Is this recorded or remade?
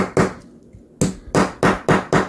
recorded